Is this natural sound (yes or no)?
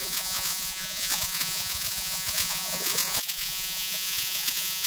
no